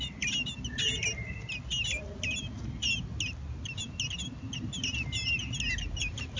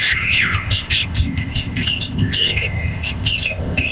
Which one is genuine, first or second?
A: first